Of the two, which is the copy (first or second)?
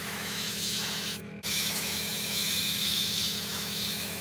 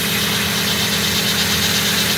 first